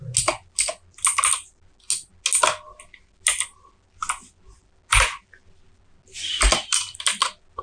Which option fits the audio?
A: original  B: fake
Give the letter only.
A